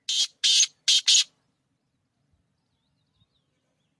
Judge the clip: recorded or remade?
recorded